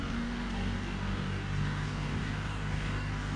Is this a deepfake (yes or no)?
yes